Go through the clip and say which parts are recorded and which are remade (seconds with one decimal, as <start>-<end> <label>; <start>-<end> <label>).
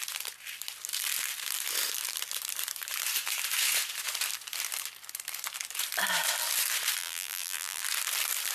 0.0-7.0 recorded; 7.0-7.8 remade; 7.8-8.5 recorded